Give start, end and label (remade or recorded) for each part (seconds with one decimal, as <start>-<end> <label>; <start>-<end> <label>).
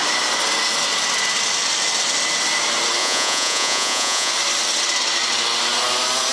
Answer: 0.0-3.0 recorded; 3.0-4.3 remade; 4.3-6.3 recorded